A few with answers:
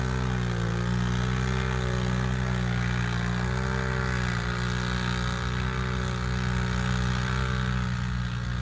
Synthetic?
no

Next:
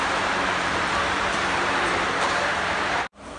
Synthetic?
yes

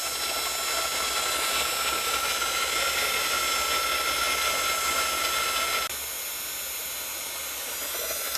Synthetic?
no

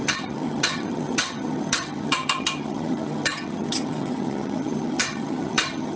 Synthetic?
yes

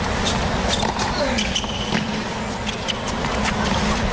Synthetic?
no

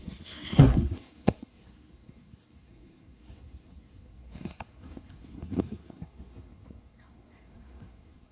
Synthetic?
yes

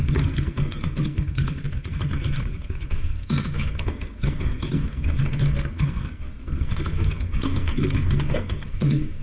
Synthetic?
yes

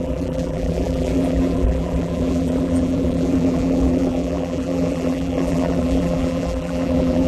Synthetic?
yes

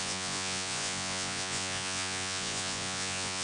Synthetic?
yes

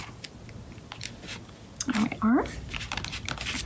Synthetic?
no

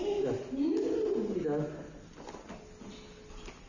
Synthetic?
no